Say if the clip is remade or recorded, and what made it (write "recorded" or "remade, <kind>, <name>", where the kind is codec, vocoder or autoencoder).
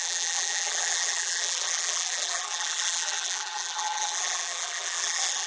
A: remade, vocoder, BigVGAN v2